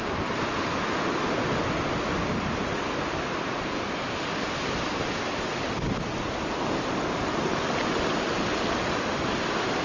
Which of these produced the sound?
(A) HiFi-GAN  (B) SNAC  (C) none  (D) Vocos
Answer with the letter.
C